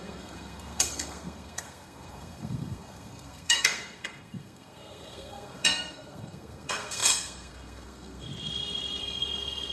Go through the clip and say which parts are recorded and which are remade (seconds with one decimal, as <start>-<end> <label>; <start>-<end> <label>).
0.0-8.3 remade; 8.3-9.0 recorded; 9.0-9.7 remade